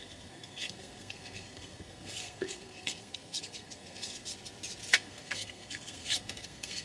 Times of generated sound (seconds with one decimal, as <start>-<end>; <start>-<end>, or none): 0.0-4.3; 4.9-6.8